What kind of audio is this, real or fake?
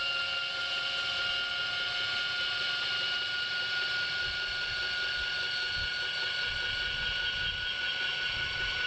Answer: real